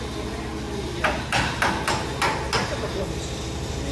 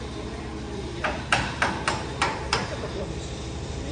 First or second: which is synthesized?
second